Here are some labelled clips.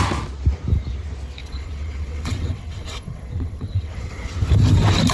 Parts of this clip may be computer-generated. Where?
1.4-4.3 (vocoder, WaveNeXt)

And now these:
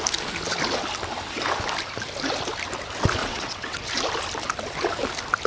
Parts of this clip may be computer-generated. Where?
3.2-3.8 (vocoder, WaveNeXt)

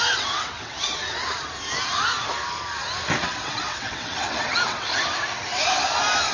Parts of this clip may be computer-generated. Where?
0.0-1.0 (vocoder, WaveNeXt); 3.2-4.9

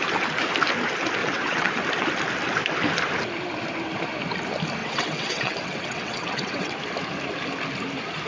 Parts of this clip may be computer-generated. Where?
1.2-1.8 (vocoder, WaveNeXt); 4.8-6.7